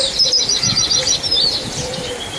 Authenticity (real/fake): real